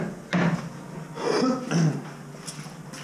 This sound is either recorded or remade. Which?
recorded